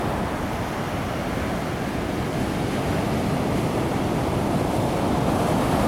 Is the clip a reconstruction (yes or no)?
no